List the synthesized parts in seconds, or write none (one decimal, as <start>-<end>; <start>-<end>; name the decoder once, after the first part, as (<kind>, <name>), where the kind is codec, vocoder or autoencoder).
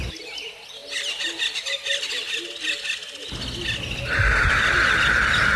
none